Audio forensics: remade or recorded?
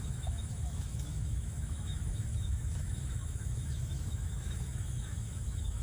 remade